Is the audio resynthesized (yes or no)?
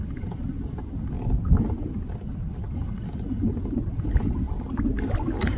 no